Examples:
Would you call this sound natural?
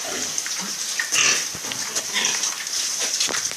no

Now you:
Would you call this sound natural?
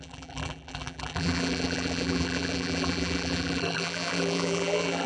no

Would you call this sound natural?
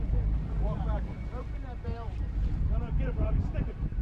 no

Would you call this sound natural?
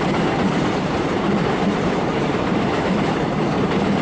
no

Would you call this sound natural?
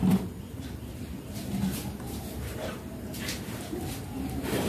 no